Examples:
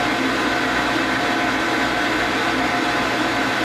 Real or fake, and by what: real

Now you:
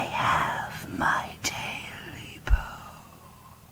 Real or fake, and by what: real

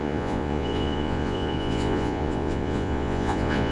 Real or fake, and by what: fake, vocoder, Vocos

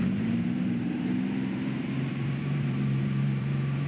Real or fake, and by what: fake, vocoder, BigVGAN v2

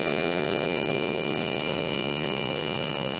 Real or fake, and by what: fake, vocoder, Vocos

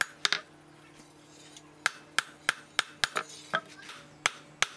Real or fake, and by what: real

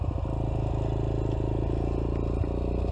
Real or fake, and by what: real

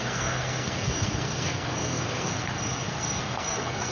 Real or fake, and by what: fake, codec, SNAC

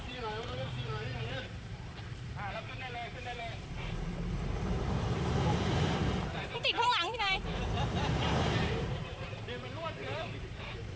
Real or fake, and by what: fake, vocoder, BigVGAN v2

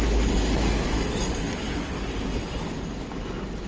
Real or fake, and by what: real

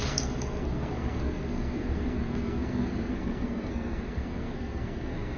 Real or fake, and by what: fake, codec, SNAC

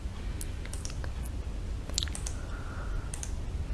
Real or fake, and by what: real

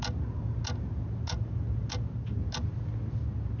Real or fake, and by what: real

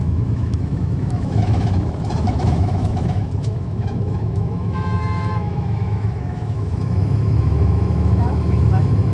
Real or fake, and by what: fake, autoencoder, DAC-VAE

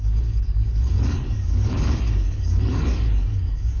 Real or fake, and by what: fake, codec, DAC